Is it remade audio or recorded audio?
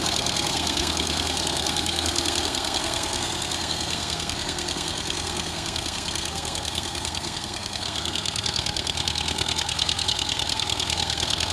remade